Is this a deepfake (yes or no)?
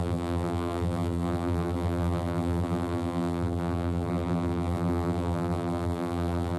yes